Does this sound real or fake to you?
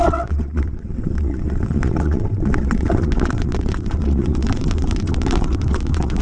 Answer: fake